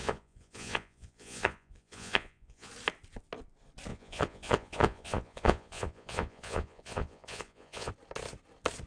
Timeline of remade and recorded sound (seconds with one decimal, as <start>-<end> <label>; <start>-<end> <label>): 0.0-2.7 remade; 2.7-3.9 recorded; 3.9-7.9 remade; 7.9-8.9 recorded